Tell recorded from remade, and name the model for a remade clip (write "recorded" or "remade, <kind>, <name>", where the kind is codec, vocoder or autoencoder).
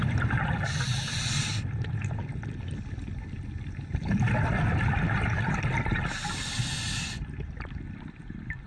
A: recorded